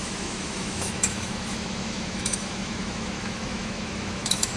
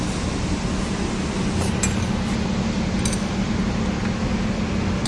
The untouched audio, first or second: second